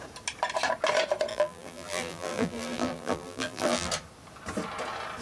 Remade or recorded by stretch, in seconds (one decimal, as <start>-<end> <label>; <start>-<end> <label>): 0.0-1.3 recorded; 1.3-3.9 remade; 3.9-5.2 recorded